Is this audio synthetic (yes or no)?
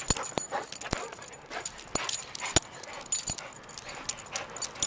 no